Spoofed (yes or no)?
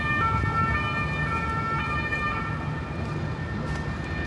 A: no